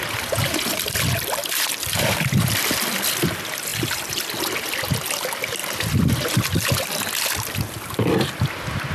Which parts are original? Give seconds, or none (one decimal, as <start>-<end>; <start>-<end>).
0.0-3.7; 4.4-5.6; 6.1-8.9